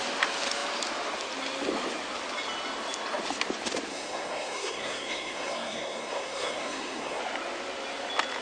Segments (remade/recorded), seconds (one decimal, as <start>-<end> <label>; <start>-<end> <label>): 0.0-3.9 recorded; 3.9-7.2 remade; 7.2-8.4 recorded